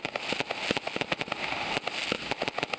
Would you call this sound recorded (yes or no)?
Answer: yes